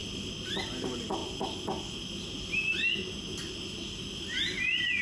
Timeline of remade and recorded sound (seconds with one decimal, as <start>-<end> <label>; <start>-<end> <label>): 0.0-5.0 recorded